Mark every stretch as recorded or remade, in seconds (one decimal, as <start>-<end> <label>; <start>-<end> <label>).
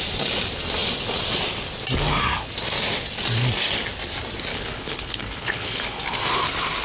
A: 0.0-4.5 recorded; 4.5-6.0 remade; 6.0-6.8 recorded